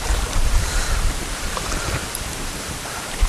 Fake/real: fake